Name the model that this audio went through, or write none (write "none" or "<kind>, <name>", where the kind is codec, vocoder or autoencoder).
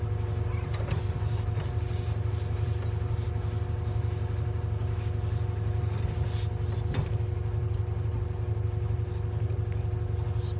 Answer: none